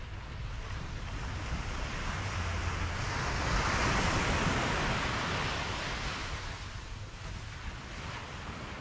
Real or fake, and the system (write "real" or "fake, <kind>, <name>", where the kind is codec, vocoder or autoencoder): real